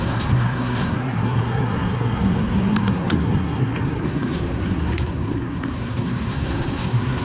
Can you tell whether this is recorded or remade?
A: remade